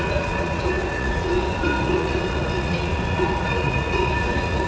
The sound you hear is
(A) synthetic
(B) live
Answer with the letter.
A